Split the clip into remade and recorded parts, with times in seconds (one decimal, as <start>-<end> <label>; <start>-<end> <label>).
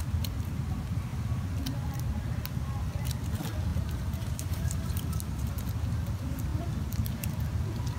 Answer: 0.0-3.7 recorded; 3.7-5.5 remade; 5.5-8.0 recorded